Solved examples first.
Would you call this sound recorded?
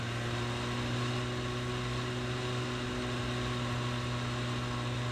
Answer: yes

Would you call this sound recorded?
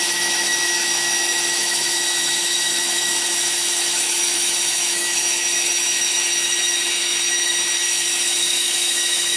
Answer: no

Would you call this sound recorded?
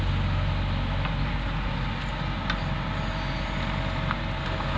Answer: yes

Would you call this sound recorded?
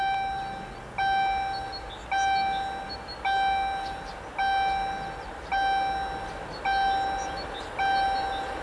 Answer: yes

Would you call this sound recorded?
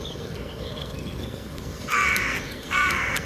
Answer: no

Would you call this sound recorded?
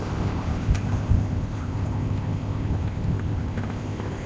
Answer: no